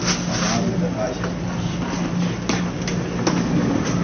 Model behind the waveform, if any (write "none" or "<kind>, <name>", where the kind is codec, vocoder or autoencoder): none